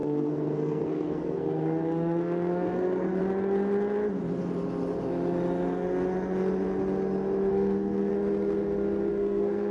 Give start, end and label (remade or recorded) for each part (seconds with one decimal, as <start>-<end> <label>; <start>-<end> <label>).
0.0-3.2 remade; 3.2-7.5 recorded; 7.5-8.1 remade; 8.1-9.1 recorded; 9.1-9.7 remade